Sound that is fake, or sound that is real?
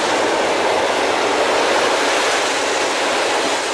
real